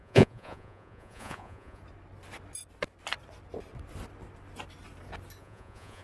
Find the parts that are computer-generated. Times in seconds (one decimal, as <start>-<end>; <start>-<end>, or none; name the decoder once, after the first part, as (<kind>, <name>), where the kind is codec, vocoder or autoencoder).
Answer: 0.0-1.8 (vocoder, Vocos); 5.4-6.0